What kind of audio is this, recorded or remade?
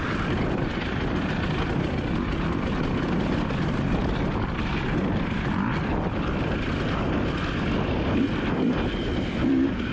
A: recorded